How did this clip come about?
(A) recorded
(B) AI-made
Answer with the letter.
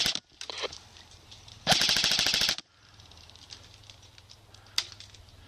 A